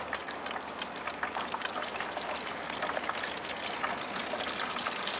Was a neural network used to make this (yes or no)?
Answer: no